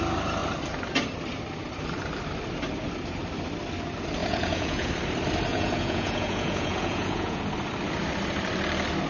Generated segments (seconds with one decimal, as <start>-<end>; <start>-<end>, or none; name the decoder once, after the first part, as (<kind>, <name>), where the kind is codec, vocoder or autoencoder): 4.2-4.9 (vocoder, Vocos); 5.5-7.4